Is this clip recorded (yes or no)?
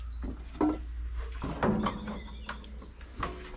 yes